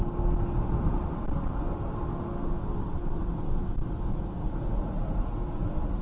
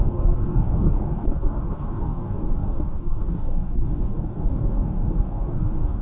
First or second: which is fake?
second